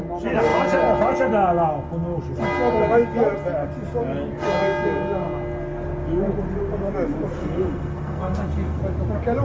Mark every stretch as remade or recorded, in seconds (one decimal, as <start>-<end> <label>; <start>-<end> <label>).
0.0-7.4 recorded; 7.4-8.8 remade; 8.8-9.4 recorded

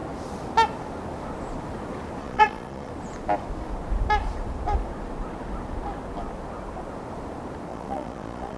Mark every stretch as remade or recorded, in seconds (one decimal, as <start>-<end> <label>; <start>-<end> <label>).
0.0-2.2 recorded; 2.2-2.9 remade; 2.9-7.7 recorded; 7.7-8.6 remade

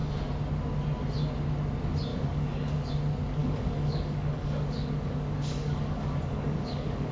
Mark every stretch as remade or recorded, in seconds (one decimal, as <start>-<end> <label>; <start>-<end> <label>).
0.0-2.1 recorded; 2.1-2.9 remade; 2.9-3.4 recorded; 3.4-7.1 remade

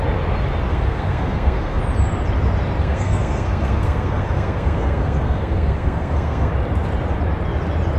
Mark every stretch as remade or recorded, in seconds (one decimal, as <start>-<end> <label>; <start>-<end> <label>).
0.0-0.7 recorded; 0.7-1.8 remade; 1.8-2.8 recorded; 2.8-6.5 remade; 6.5-8.0 recorded

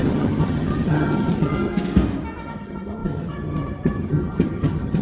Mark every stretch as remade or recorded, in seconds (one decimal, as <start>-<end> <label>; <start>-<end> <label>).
0.0-1.7 remade; 1.7-2.4 recorded; 2.4-5.0 remade

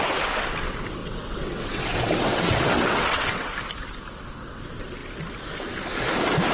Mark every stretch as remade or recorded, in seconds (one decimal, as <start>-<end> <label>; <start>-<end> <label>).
0.0-1.0 recorded; 1.0-3.5 remade; 3.5-6.5 recorded